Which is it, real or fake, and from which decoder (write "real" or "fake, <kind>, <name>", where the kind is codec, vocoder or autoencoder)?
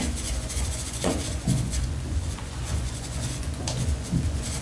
fake, vocoder, Vocos